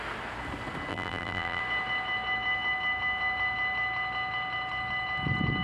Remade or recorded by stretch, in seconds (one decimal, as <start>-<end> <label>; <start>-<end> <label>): 0.0-0.9 recorded; 0.9-1.6 remade; 1.6-5.6 recorded